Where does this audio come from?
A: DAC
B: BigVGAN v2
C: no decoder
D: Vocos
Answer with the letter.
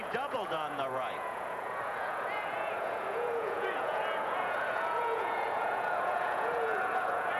D